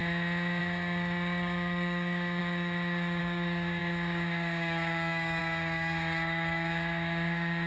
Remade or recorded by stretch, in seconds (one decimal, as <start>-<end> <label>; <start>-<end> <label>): 0.0-0.6 recorded; 0.6-7.7 remade